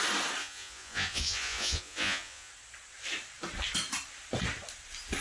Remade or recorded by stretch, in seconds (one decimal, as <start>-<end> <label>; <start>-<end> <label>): 0.0-0.4 recorded; 0.4-2.5 remade; 2.5-5.2 recorded